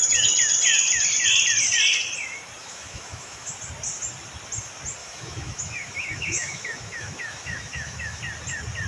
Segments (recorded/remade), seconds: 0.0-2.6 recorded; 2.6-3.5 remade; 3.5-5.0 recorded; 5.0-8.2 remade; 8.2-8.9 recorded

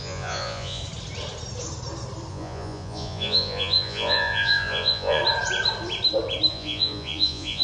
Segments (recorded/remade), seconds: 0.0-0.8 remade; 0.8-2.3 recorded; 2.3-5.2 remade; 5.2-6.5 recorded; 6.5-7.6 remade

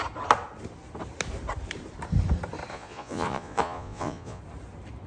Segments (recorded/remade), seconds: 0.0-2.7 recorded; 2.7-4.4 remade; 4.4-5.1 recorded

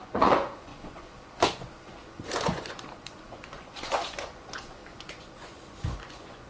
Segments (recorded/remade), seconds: 0.0-6.5 remade